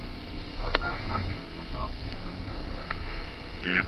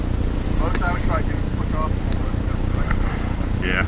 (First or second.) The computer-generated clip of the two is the first